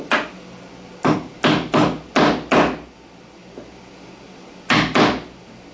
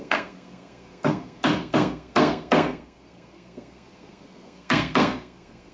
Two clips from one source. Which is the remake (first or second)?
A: second